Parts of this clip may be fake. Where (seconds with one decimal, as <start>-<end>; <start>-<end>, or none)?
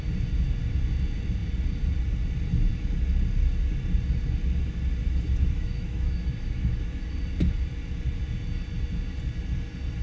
5.0-7.1